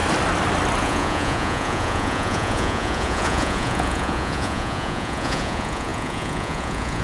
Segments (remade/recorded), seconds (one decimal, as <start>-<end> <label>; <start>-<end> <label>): 0.0-0.8 recorded; 0.8-7.0 remade